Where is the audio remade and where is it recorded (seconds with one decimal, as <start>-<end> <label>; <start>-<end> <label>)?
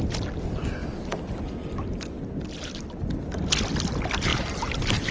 0.0-4.3 recorded; 4.3-5.1 remade